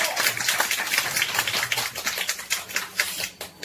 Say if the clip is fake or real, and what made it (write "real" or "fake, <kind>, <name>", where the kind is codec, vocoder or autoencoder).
real